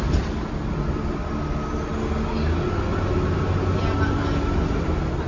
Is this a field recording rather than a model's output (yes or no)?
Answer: yes